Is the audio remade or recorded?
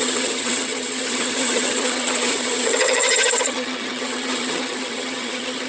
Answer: remade